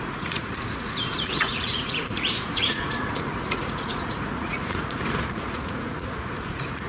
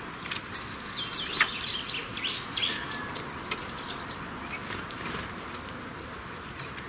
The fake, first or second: first